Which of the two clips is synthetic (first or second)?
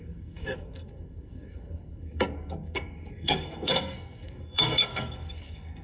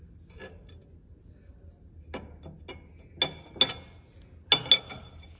first